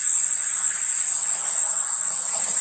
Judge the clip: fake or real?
fake